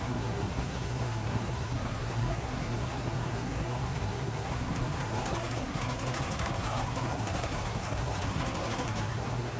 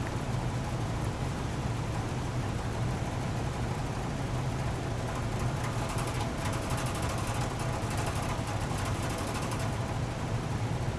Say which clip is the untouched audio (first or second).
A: second